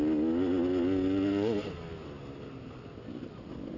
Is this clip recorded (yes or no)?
yes